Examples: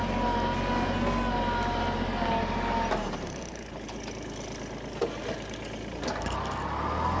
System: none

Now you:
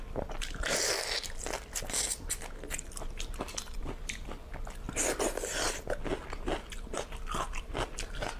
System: none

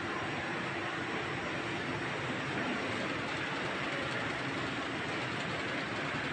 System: none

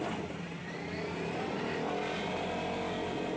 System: none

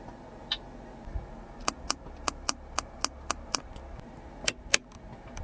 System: none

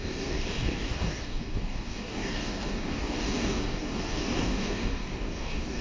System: codec, DAC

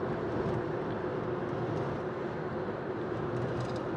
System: none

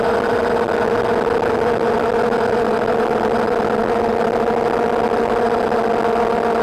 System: none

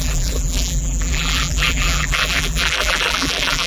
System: vocoder, BigVGAN v2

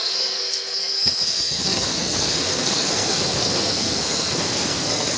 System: codec, SNAC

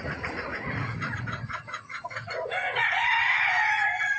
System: vocoder, Vocos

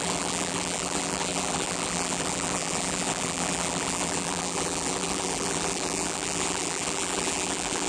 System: vocoder, BigVGAN v2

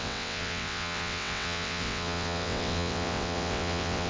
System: vocoder, WaveNeXt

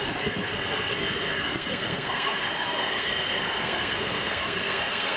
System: codec, SNAC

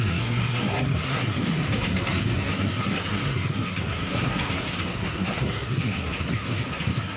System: codec, SNAC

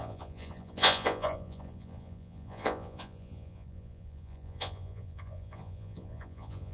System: vocoder, Vocos